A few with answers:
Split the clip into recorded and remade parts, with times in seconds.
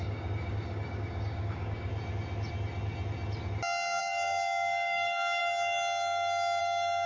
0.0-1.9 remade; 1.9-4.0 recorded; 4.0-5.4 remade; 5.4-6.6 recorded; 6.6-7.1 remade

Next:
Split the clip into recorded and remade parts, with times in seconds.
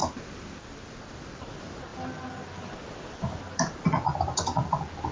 0.0-5.1 recorded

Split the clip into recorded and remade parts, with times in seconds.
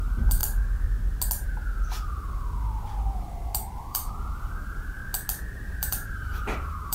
0.0-0.4 remade; 0.4-3.8 recorded; 3.8-5.0 remade; 5.0-5.8 recorded; 5.8-6.9 remade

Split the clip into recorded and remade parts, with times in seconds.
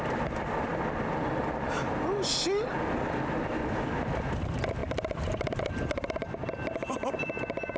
0.0-7.8 recorded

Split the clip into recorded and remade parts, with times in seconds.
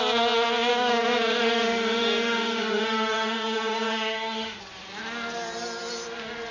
0.0-0.7 recorded; 0.7-4.6 remade; 4.6-6.5 recorded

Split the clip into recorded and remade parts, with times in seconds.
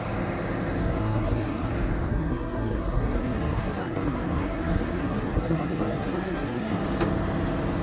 0.0-0.8 recorded; 0.8-1.7 remade; 1.7-2.1 recorded; 2.1-6.8 remade; 6.8-7.8 recorded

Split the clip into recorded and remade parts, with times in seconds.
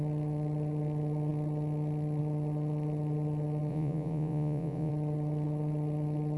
0.0-3.7 recorded; 3.7-4.9 remade; 4.9-6.4 recorded